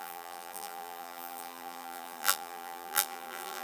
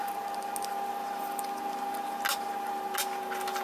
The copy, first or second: first